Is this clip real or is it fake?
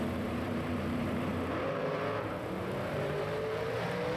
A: fake